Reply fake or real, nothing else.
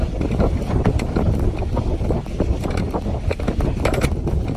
real